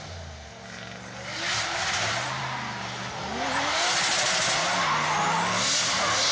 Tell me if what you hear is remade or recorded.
recorded